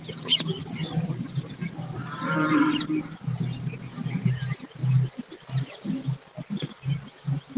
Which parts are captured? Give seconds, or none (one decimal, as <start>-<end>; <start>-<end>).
0.0-0.8; 2.9-7.6